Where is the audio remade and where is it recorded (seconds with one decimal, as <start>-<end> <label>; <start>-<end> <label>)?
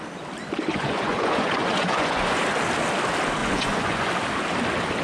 0.0-0.7 recorded; 0.7-2.4 remade; 2.4-3.4 recorded; 3.4-4.1 remade; 4.1-5.0 recorded